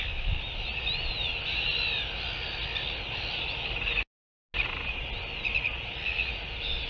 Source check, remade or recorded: recorded